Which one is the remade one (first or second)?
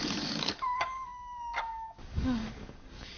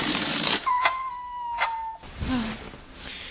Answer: first